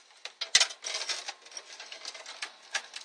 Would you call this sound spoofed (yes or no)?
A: no